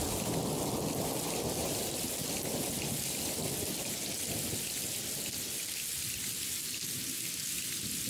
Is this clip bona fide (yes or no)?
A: yes